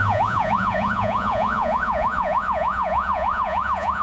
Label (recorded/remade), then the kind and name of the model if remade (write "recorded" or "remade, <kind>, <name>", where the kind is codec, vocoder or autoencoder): remade, vocoder, Vocos